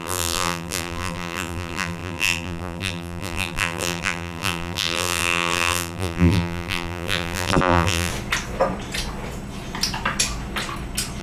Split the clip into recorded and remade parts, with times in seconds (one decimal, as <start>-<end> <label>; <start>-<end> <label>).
0.0-8.1 remade; 8.1-11.2 recorded